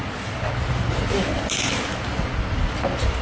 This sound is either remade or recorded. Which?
recorded